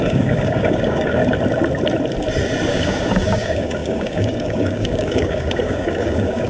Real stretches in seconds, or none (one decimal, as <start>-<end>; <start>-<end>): 1.2-2.7